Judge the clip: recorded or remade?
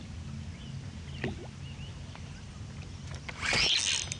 recorded